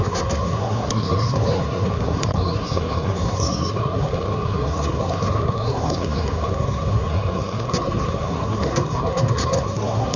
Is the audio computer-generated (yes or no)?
yes